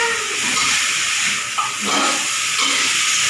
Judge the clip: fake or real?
real